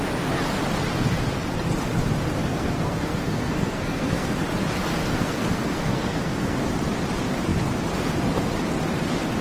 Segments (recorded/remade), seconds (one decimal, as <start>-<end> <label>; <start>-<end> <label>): 0.0-2.5 recorded; 2.5-4.4 remade; 4.4-5.1 recorded; 5.1-6.7 remade; 6.7-9.4 recorded